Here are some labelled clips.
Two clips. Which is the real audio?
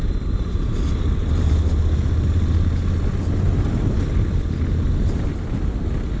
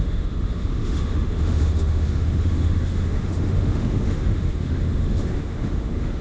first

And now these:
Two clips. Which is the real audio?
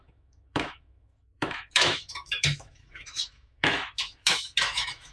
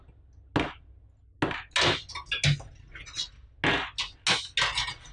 second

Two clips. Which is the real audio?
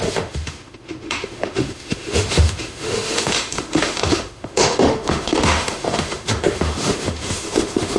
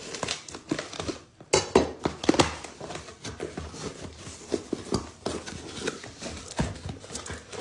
second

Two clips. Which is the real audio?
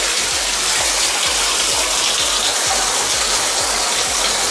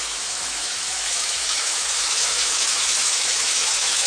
first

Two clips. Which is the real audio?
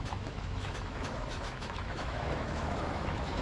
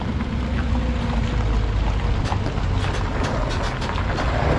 second